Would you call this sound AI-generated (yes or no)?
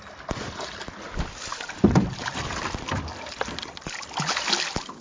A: no